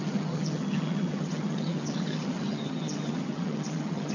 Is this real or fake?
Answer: fake